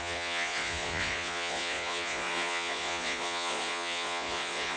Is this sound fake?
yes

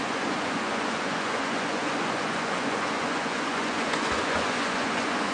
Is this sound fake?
yes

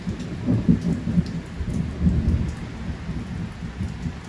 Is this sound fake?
no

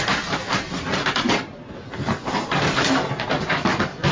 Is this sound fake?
no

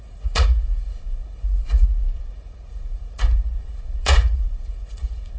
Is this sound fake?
yes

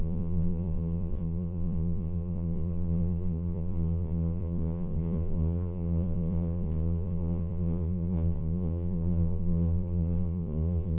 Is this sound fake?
yes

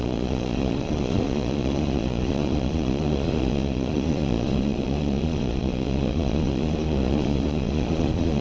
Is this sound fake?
yes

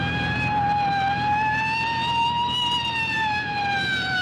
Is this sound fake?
no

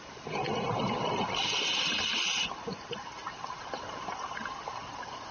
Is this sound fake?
no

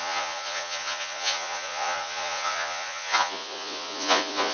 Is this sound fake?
yes